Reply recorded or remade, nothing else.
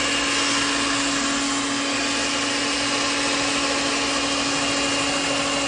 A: recorded